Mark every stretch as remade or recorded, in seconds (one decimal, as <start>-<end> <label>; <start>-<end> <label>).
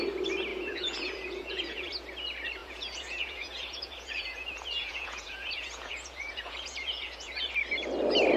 0.0-0.5 recorded; 0.5-1.9 remade; 1.9-2.6 recorded; 2.6-7.5 remade; 7.5-8.4 recorded